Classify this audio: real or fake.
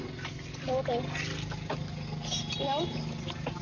real